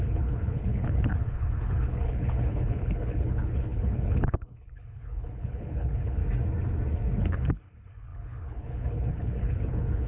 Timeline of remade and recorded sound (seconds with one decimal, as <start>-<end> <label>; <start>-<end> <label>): 0.0-6.2 remade; 6.2-7.2 recorded; 7.2-10.1 remade